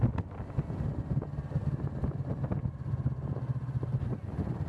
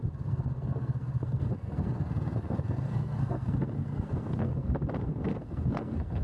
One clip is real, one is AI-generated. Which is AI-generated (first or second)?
second